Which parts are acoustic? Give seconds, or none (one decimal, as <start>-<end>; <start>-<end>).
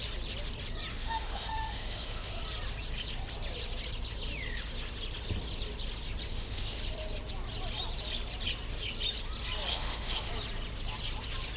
0.0-0.9; 2.4-6.3; 6.8-9.7; 10.3-11.6